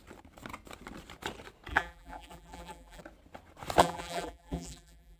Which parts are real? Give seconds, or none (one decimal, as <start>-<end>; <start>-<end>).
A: 0.0-1.7; 3.0-3.8